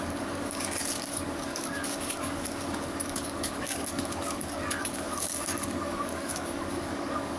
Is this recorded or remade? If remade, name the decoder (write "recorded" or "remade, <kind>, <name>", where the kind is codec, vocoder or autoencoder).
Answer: remade, codec, DAC